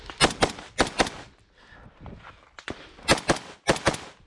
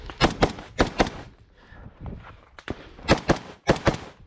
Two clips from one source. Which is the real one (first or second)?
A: first